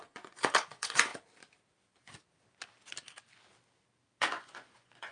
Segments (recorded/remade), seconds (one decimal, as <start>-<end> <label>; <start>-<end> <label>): 0.0-1.1 remade; 1.1-4.2 recorded; 4.2-5.1 remade